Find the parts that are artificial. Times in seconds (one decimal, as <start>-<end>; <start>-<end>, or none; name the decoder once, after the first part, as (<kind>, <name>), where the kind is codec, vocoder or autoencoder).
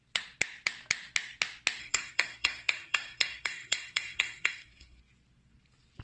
1.8-5.0 (codec, SNAC)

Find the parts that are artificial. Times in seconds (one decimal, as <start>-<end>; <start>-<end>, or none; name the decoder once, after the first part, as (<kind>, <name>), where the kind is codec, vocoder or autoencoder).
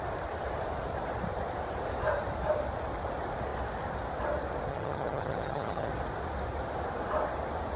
4.7-5.9 (vocoder, HiFi-GAN)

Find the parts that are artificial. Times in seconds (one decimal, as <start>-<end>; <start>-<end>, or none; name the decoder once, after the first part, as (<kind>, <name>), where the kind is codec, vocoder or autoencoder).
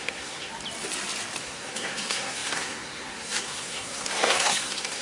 0.0-0.5 (codec, SNAC); 1.4-5.0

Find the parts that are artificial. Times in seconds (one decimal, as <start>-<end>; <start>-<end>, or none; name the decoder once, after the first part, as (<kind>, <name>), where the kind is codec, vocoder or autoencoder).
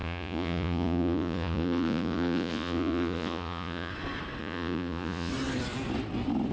0.0-3.9 (vocoder, Vocos); 4.4-5.3